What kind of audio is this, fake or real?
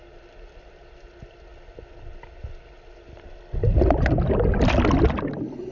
real